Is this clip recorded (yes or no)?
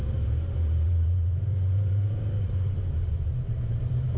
no